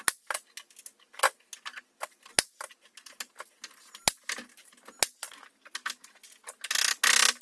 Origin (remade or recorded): recorded